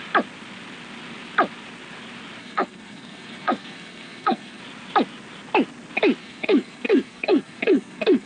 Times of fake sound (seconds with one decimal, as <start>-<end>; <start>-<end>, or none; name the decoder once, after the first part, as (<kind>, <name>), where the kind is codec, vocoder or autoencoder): 2.4-4.6 (codec, SNAC); 6.2-8.3